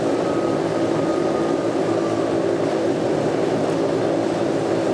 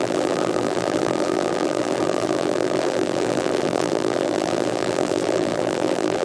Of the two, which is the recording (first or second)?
first